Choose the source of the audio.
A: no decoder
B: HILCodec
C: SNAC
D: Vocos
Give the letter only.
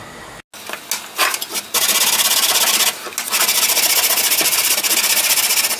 A